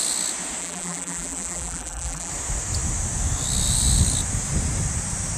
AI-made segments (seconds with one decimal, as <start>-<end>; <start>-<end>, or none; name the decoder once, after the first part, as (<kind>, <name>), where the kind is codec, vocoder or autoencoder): 0.6-2.3 (vocoder, BigVGAN v2)